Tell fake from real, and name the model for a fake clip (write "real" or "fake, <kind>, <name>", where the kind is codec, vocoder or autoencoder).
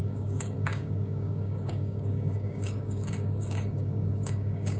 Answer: fake, codec, DAC